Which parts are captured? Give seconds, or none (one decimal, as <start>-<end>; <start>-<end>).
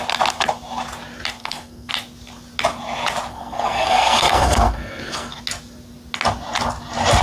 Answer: 0.0-1.4; 1.9-3.3; 5.4-7.2